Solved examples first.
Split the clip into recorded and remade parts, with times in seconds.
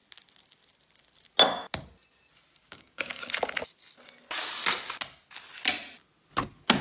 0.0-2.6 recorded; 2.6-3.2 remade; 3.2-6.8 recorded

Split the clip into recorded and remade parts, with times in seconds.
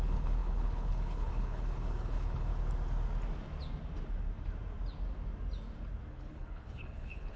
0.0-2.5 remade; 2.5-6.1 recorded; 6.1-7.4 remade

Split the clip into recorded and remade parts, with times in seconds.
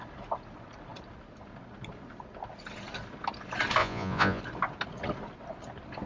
0.0-3.8 recorded; 3.8-4.4 remade; 4.4-6.1 recorded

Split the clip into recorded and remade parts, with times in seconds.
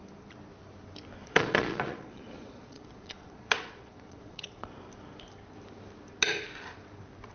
0.0-1.2 recorded; 1.2-4.7 remade; 4.7-7.3 recorded